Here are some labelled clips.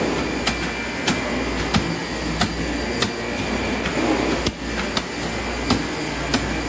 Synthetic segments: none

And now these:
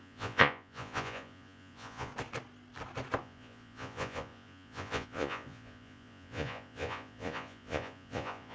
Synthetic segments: 0.0-2.1 (vocoder, Vocos); 3.2-8.5

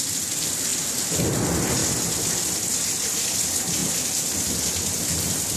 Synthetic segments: none

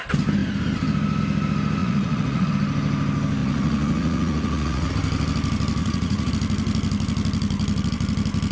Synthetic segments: 1.8-2.5 (vocoder, Vocos); 3.4-4.9; 5.8-6.3

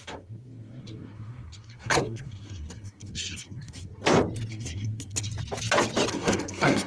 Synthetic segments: 0.0-3.9 (codec, SNAC); 4.5-5.3; 6.1-6.9

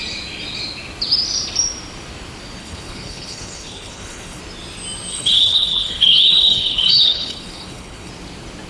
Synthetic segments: 2.6-4.4 (codec, HILCodec); 5.1-8.1

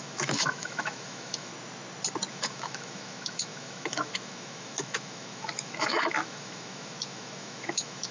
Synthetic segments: 0.0-1.5 (autoencoder, DAC-VAE); 2.3-8.1